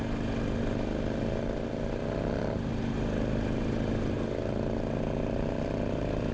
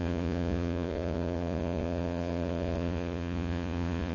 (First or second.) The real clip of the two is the first